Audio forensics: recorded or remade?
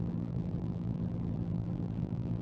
remade